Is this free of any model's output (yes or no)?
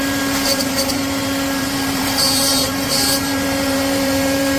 no